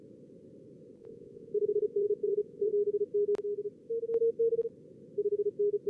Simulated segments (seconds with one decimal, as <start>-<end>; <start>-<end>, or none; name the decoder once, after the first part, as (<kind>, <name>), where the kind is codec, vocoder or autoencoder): 1.0-2.7 (vocoder, Vocos)